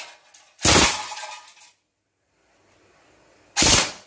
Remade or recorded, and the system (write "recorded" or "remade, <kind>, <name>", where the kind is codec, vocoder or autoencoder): recorded